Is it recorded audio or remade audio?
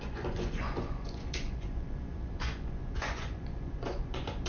remade